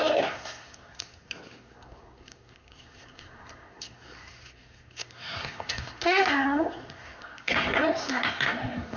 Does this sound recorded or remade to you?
remade